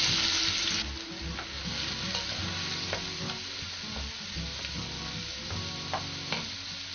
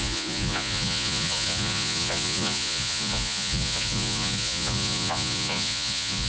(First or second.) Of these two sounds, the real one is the first